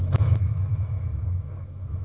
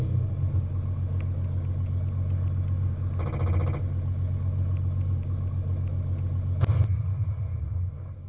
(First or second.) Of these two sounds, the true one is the second